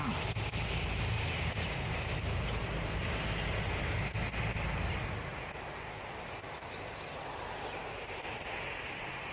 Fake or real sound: real